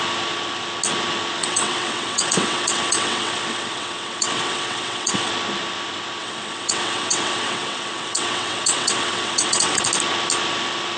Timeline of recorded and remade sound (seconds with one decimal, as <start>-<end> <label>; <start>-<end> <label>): 0.0-1.4 recorded; 1.4-5.3 remade; 5.3-6.2 recorded; 6.2-9.8 remade; 9.8-11.0 recorded